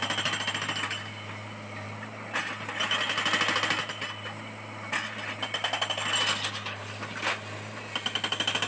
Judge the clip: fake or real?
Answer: real